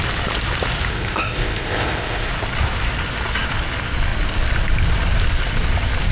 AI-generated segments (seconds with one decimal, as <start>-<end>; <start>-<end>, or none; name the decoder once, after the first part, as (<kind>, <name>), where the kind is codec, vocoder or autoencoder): 0.9-2.3 (codec, ZipCodec)